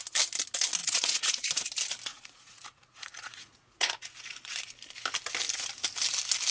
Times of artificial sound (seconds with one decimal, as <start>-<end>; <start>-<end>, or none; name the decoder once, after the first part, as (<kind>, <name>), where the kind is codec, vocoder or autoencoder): 0.8-1.5 (vocoder, Vocos); 2.1-4.4